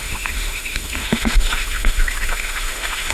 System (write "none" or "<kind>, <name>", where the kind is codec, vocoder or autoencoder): autoencoder, DAC-VAE